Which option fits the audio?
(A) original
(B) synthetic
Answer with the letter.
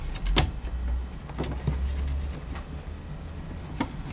A